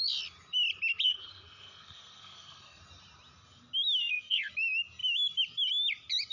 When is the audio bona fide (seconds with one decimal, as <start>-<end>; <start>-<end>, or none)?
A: 0.0-1.1; 2.8-4.0; 4.5-6.3